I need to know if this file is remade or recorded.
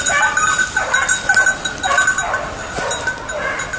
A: recorded